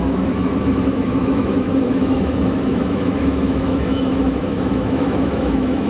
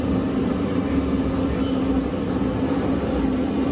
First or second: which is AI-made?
first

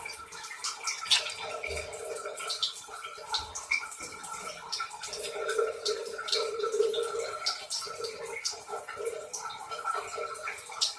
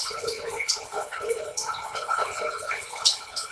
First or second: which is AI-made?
second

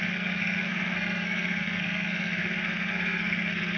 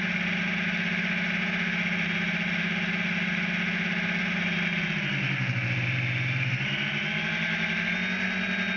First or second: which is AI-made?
first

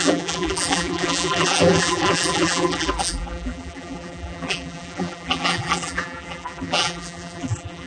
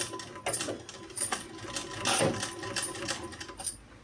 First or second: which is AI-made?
first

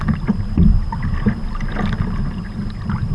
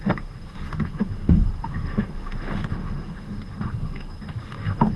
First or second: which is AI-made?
second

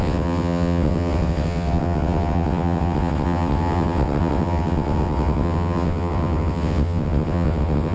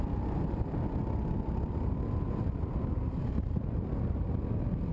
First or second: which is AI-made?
first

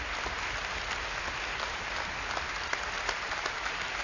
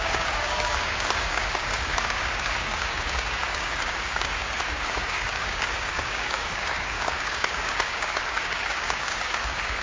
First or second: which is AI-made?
second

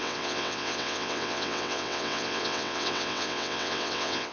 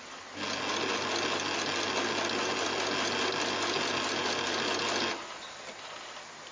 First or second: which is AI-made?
first